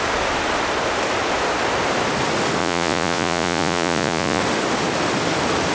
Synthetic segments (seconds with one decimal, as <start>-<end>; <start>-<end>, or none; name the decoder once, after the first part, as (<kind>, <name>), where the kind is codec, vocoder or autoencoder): 2.6-4.4 (vocoder, Vocos)